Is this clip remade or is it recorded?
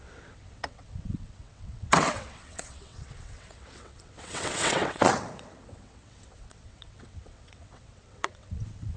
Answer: remade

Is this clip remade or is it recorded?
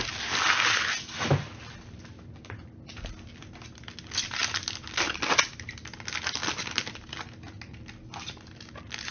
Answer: recorded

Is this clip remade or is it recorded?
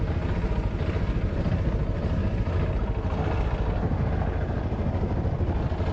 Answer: recorded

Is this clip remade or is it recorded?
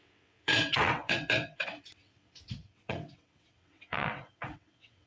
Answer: remade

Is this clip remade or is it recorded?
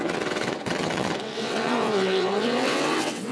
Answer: remade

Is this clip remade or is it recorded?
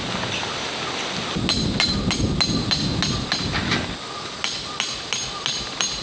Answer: recorded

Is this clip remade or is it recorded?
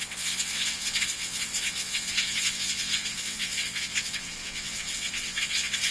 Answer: remade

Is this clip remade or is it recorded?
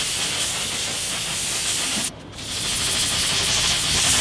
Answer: recorded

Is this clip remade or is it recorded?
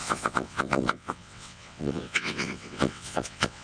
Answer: remade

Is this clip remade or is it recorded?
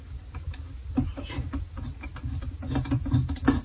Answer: recorded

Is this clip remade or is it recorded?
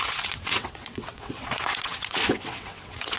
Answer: remade